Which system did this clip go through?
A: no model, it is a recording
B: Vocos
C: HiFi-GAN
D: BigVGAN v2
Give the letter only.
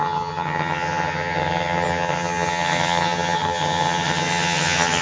C